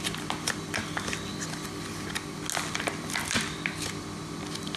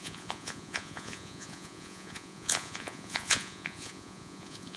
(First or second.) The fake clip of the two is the second